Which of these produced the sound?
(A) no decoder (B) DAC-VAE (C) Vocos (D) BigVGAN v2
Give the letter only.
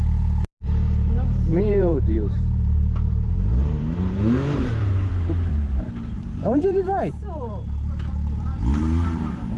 D